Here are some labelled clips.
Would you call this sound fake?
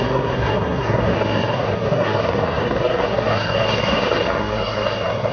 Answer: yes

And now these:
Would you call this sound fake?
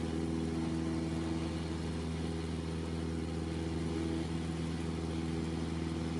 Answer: no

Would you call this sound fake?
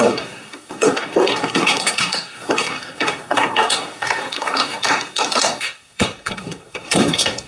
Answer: yes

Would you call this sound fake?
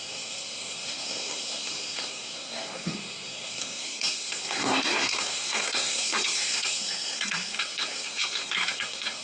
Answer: yes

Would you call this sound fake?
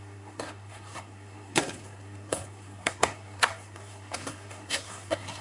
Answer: yes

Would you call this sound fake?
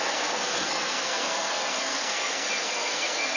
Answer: yes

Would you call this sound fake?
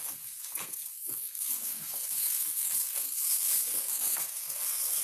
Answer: yes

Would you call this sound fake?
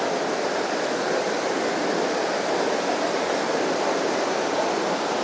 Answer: no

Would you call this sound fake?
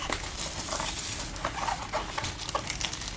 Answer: no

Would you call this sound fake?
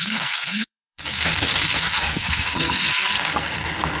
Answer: yes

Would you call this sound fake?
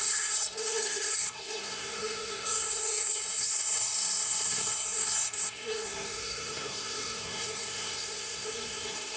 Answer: yes